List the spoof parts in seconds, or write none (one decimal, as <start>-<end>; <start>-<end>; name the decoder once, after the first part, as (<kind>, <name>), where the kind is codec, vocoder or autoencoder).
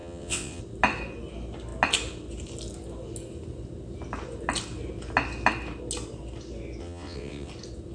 0.0-0.6 (vocoder, WaveNeXt); 6.8-7.5